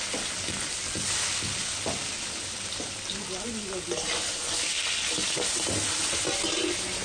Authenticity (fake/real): real